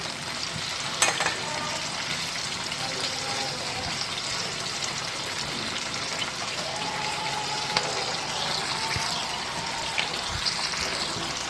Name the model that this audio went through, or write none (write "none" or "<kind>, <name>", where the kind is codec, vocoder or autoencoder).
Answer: none